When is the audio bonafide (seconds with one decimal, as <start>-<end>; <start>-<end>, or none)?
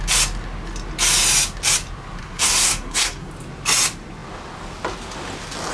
0.0-2.2; 3.3-5.7